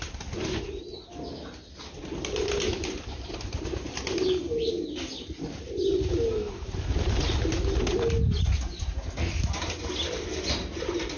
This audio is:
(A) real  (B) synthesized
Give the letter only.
A